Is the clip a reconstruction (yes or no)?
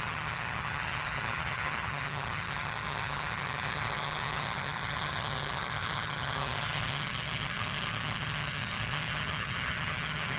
yes